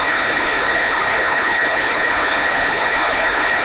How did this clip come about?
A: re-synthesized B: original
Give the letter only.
A